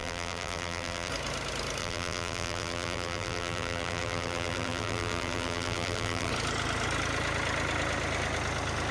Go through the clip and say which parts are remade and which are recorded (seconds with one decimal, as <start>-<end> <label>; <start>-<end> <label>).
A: 0.0-1.1 remade; 1.1-1.8 recorded; 1.8-6.3 remade; 6.3-8.9 recorded